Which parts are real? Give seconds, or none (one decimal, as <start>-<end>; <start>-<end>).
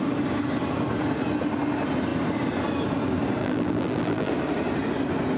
0.0-3.4; 4.3-5.4